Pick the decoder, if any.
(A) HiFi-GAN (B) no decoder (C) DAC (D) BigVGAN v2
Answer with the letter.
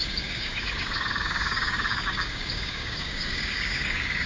C